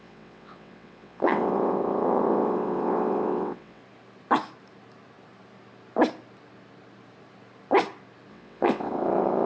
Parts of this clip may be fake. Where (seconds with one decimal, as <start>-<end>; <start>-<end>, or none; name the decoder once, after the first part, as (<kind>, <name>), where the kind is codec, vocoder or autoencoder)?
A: 0.0-3.8 (vocoder, WaveNeXt); 8.3-9.5